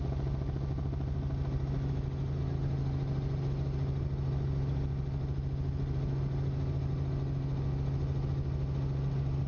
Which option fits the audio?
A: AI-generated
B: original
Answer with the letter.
B